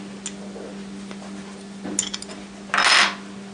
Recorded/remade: recorded